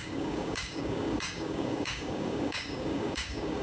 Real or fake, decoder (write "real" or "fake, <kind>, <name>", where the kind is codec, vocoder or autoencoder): fake, codec, DAC